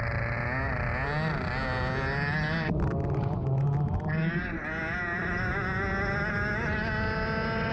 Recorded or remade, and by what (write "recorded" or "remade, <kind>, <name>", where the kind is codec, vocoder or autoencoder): recorded